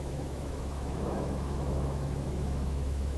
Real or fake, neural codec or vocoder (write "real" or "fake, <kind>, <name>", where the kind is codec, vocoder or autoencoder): fake, autoencoder, DAC-VAE